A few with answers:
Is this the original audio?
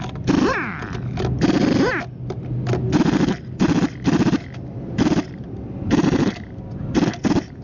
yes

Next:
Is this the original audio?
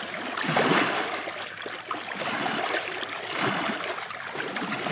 yes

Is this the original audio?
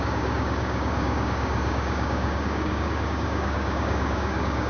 no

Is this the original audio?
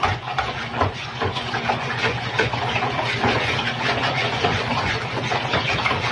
no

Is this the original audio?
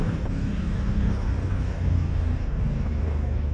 no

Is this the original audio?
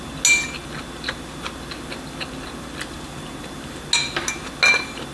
yes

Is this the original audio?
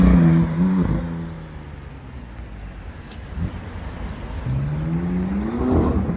yes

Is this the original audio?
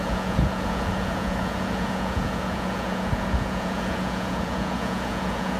no